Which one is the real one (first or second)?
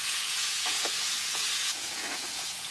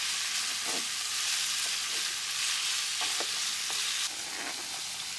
second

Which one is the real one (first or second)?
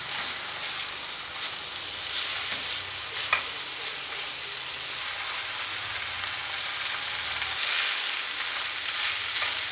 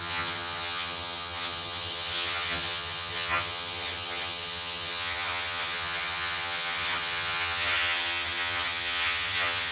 first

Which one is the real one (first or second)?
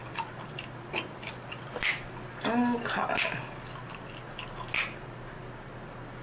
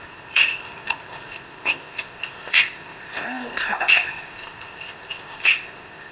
first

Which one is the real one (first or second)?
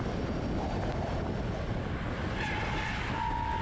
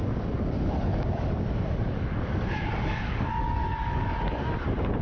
first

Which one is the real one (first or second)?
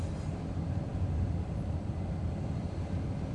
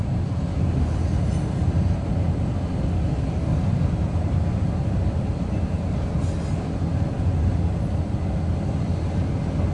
second